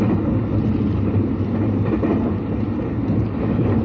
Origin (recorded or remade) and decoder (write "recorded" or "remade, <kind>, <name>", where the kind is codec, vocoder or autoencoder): recorded